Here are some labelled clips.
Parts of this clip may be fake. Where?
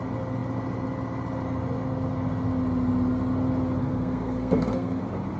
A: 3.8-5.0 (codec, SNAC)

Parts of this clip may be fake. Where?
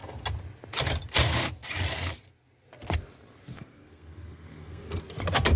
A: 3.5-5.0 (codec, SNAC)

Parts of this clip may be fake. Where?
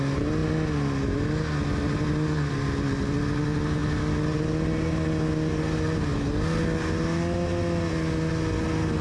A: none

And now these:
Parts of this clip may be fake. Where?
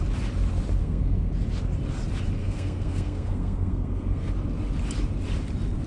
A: 0.8-1.3 (codec, SNAC); 2.4-4.3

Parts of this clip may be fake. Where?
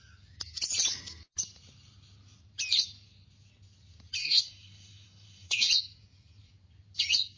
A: 4.2-5.7 (codec, SNAC)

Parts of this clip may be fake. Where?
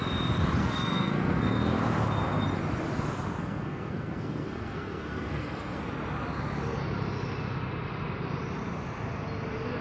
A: 0.6-1.6 (codec, SNAC); 3.4-5.8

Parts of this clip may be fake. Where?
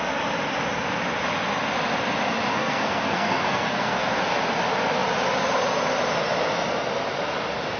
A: 2.5-4.2 (codec, SNAC)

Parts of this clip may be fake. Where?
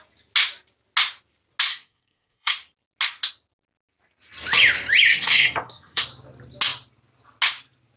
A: 1.7-2.5 (codec, SNAC); 5.1-6.0